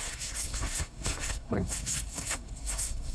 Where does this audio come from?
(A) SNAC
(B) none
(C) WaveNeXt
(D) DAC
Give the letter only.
A